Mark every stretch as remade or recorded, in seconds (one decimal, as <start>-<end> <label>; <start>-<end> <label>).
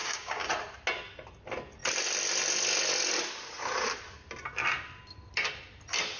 0.0-0.5 remade; 0.5-6.2 recorded